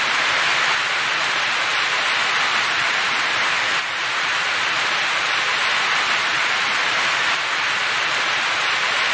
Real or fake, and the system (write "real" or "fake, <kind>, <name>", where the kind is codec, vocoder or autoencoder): fake, vocoder, BigVGAN v2